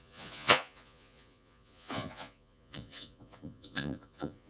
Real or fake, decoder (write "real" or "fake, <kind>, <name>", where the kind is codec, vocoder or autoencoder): fake, vocoder, Vocos